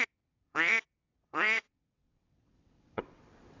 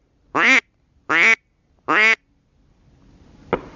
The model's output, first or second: first